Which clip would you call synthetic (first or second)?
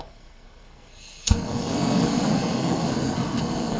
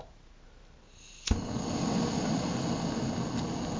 first